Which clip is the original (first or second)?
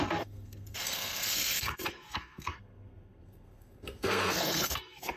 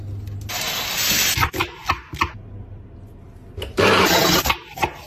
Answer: second